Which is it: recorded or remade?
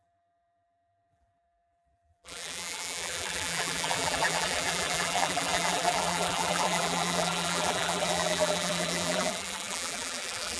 remade